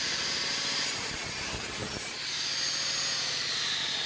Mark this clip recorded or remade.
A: recorded